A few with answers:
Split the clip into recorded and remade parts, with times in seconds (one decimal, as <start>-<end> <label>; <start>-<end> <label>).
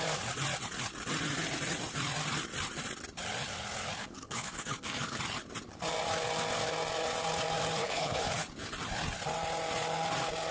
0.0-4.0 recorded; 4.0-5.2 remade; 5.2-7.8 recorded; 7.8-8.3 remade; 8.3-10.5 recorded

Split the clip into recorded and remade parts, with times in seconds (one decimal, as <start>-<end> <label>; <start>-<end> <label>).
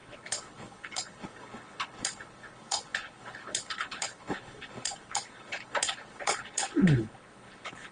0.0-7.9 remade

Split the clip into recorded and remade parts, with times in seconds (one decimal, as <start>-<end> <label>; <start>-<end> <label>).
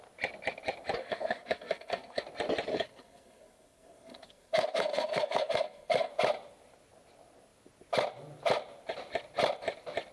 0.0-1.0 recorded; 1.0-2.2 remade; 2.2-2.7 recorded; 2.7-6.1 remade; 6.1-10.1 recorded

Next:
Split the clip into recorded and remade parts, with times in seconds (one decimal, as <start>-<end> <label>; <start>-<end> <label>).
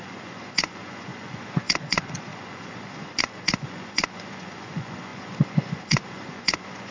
0.0-6.9 remade